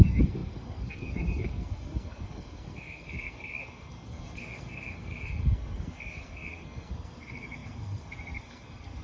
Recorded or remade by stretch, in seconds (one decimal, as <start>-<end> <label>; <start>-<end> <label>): 0.0-9.0 remade

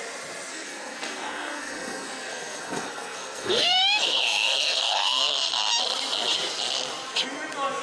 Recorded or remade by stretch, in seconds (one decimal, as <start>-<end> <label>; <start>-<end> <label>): 0.0-0.5 recorded; 0.5-5.2 remade; 5.2-7.8 recorded